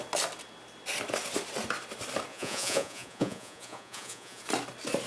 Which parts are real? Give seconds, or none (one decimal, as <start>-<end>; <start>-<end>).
0.0-2.3; 4.4-5.1